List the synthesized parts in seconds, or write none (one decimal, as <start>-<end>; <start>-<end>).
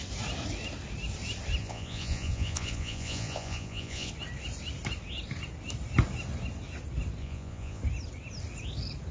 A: 1.6-4.1; 7.2-7.8